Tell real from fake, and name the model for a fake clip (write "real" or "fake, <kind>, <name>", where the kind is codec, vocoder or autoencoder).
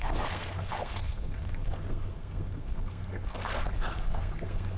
fake, codec, SNAC